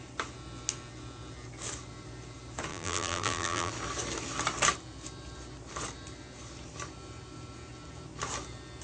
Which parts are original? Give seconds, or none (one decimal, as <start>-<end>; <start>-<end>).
0.0-2.7; 3.7-8.8